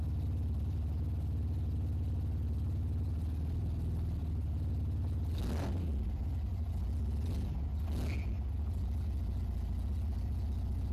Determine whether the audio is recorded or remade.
recorded